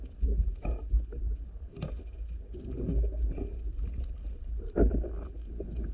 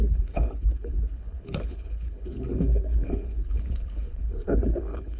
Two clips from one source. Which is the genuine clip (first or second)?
first